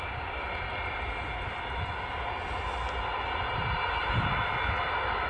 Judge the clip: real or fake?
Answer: real